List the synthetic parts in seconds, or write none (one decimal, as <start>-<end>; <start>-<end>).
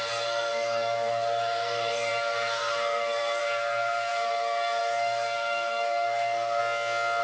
0.0-6.6